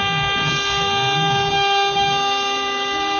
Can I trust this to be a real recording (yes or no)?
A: yes